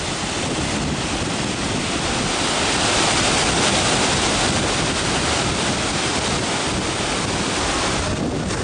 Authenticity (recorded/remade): recorded